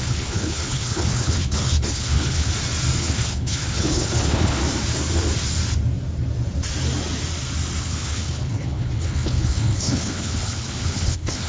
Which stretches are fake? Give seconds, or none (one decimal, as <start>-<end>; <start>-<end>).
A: 0.0-2.5; 3.0-4.6; 7.8-11.5